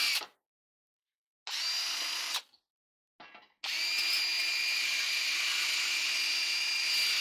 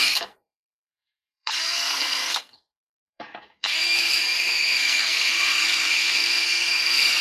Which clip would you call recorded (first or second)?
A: first